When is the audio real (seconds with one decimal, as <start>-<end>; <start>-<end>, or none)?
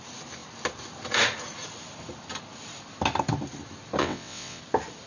0.0-4.0; 4.6-5.1